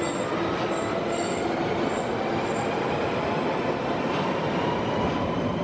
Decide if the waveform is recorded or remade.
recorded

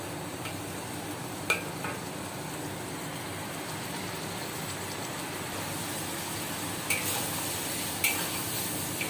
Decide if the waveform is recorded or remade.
recorded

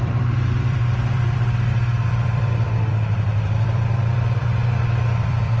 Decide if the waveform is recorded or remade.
remade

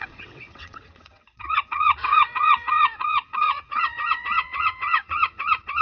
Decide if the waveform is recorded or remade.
remade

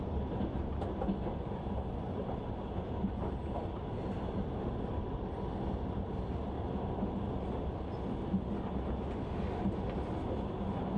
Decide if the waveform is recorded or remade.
recorded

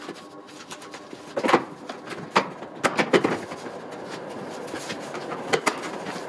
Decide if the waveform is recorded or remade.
recorded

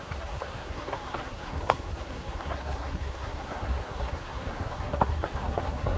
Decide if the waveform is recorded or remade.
remade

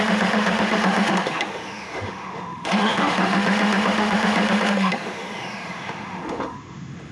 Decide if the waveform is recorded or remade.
remade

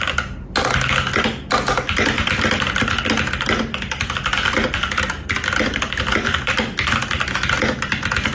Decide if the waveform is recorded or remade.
recorded